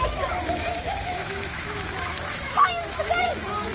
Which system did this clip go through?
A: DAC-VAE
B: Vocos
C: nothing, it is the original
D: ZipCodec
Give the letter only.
A